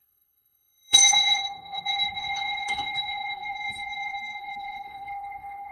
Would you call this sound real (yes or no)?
no